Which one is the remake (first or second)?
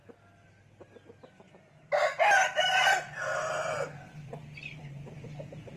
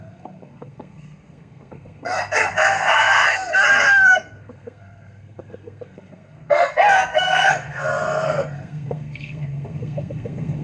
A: second